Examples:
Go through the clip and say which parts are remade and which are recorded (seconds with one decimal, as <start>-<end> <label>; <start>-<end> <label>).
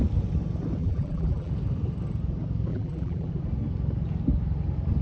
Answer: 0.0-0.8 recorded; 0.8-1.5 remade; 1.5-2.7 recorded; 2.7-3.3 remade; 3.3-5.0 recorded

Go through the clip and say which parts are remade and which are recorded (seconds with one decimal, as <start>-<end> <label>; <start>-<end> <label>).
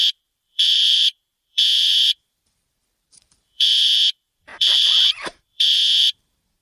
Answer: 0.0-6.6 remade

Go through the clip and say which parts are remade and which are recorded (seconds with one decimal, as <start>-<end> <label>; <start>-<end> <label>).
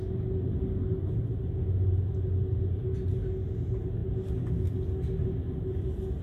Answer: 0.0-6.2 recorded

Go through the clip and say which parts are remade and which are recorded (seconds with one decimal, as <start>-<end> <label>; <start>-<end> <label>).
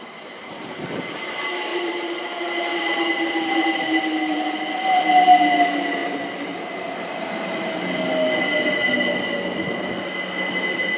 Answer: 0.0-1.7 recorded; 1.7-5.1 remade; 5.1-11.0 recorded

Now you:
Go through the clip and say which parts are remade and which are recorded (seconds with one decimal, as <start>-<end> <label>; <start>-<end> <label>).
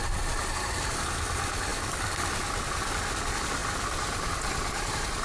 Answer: 0.0-1.7 recorded; 1.7-2.6 remade; 2.6-3.6 recorded; 3.6-4.3 remade; 4.3-5.2 recorded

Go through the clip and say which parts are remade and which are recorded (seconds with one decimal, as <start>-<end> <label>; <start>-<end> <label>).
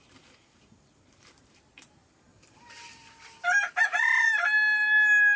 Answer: 0.0-2.3 remade; 2.3-5.4 recorded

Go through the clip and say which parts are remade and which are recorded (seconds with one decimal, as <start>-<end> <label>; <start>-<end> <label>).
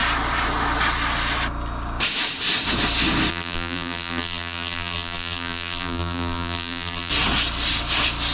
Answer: 0.0-3.3 recorded; 3.3-7.1 remade; 7.1-8.3 recorded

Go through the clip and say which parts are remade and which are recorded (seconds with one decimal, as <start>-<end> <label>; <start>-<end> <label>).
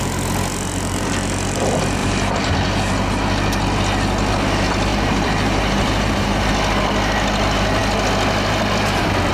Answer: 0.0-2.0 recorded; 2.0-2.5 remade; 2.5-4.9 recorded; 4.9-6.5 remade; 6.5-9.3 recorded